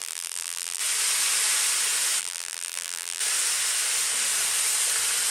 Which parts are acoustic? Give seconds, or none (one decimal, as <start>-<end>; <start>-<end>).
0.8-2.2; 3.2-5.3